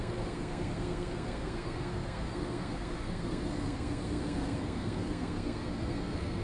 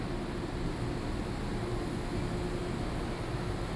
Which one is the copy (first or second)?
first